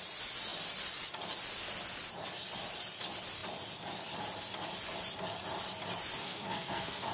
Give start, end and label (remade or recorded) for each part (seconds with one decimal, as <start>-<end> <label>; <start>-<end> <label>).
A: 0.0-6.2 recorded; 6.2-7.1 remade